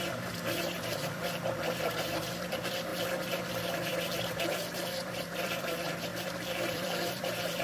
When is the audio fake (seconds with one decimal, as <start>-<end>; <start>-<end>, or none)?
0.0-2.9; 3.4-7.6